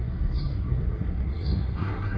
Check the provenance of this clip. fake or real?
fake